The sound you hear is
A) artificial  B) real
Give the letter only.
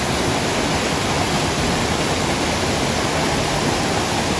B